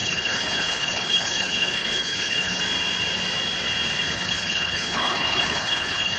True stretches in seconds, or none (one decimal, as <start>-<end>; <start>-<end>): 2.6-4.0